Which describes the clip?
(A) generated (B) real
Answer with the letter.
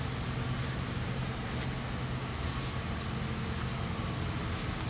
B